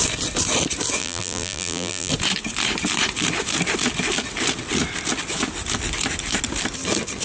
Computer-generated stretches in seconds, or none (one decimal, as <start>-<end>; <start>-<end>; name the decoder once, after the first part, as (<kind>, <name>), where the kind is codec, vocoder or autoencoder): 1.0-2.1 (vocoder, BigVGAN v2)